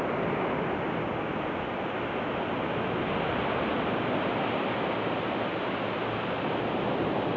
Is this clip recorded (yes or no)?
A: yes